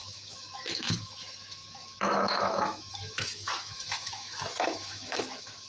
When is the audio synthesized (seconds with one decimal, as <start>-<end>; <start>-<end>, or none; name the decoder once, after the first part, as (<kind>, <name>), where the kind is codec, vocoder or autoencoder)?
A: 0.0-5.7 (autoencoder, DAC-VAE)